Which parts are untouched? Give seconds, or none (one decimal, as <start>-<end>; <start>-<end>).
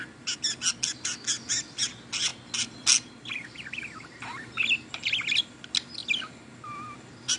0.0-7.4